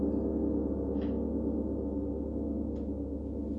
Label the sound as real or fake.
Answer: real